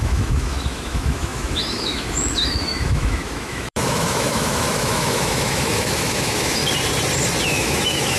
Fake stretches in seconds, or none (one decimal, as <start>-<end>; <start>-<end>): 0.0-6.6; 7.4-8.2